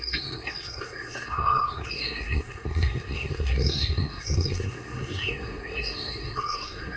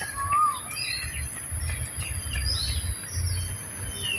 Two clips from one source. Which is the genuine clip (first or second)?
second